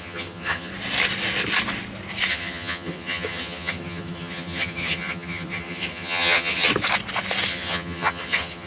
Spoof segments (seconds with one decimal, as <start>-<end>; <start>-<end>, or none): 0.0-0.7; 2.3-6.7; 7.5-8.7